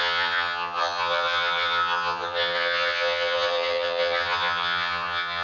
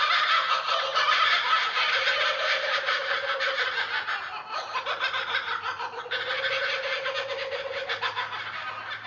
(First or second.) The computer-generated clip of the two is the first